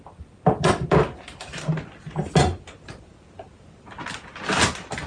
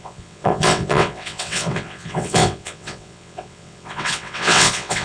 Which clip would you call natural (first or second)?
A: first